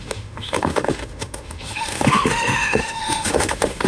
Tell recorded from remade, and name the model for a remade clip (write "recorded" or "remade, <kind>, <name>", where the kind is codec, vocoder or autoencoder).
remade, autoencoder, DAC-VAE